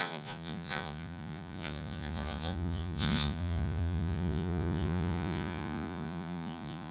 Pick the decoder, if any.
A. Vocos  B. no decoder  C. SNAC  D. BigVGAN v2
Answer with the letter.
A